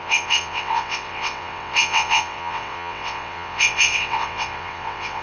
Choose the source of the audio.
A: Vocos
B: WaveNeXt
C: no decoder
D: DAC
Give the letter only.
B